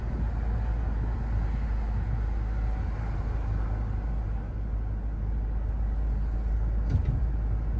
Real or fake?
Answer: real